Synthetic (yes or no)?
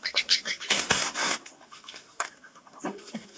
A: yes